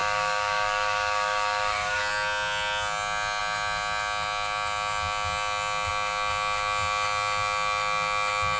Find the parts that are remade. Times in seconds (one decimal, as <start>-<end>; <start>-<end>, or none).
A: 0.0-2.0